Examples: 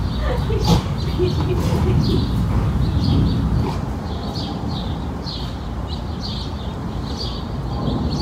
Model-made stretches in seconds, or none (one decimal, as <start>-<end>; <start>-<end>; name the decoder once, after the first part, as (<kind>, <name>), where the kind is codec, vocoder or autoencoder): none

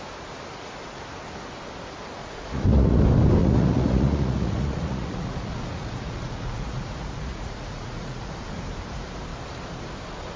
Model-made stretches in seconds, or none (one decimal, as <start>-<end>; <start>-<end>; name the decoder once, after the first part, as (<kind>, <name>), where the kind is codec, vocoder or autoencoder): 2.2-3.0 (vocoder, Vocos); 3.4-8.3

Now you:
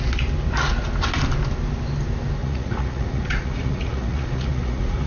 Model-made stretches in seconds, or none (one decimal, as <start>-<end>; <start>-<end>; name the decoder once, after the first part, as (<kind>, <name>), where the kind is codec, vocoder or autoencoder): 2.4-5.1 (vocoder, Vocos)

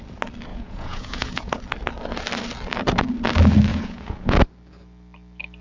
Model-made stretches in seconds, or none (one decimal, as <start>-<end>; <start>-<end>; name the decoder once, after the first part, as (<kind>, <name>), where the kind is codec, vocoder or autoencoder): 0.5-1.6 (vocoder, Vocos); 3.7-4.4